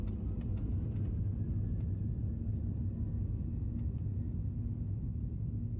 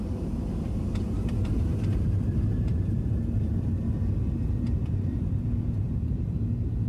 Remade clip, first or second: second